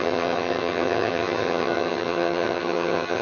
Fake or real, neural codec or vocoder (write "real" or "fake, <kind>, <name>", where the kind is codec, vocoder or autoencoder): fake, vocoder, HiFi-GAN